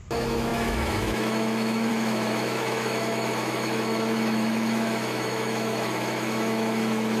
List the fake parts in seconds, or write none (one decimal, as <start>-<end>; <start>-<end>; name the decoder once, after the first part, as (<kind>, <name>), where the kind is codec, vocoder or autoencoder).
0.0-7.2 (autoencoder, DAC-VAE)